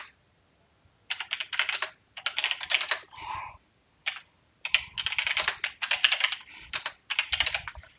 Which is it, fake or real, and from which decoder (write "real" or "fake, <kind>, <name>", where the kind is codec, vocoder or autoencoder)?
real